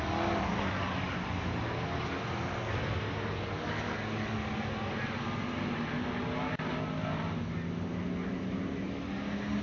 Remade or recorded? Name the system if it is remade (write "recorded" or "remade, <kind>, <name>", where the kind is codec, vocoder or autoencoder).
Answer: recorded